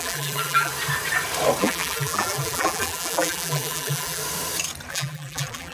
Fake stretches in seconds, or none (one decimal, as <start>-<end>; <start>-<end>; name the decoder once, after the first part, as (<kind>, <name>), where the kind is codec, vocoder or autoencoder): 0.0-0.7 (vocoder, BigVGAN v2); 1.6-4.2; 4.9-5.7